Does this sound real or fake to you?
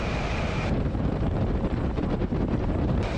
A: fake